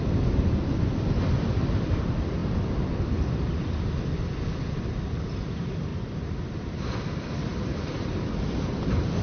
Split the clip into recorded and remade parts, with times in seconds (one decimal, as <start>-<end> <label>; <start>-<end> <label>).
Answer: 0.0-5.9 recorded; 5.9-6.5 remade; 6.5-7.5 recorded; 7.5-8.1 remade; 8.1-9.2 recorded